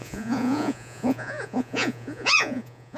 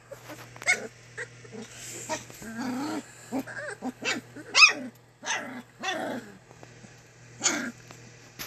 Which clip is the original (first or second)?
second